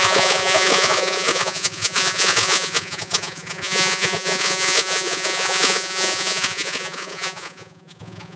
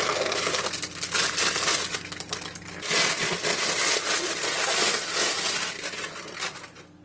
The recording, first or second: second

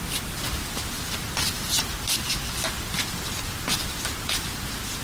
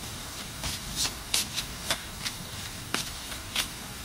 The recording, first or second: first